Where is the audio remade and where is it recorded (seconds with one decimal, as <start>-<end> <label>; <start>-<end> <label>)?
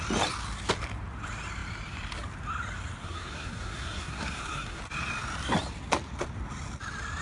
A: 0.0-3.0 recorded; 3.0-4.8 remade; 4.8-7.2 recorded